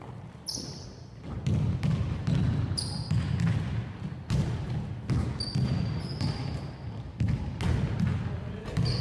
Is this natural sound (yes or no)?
yes